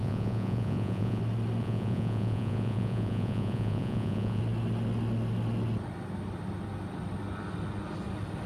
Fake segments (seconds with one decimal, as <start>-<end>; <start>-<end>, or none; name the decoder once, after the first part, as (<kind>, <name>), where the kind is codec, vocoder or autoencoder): 0.0-1.2 (vocoder, Vocos); 1.6-4.4